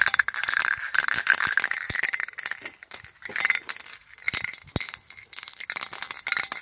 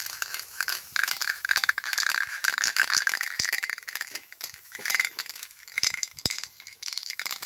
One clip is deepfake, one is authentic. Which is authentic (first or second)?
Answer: first